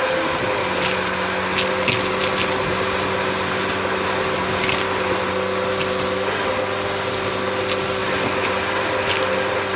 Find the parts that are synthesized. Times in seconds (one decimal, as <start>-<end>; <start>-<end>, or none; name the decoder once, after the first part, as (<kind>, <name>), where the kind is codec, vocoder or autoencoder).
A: none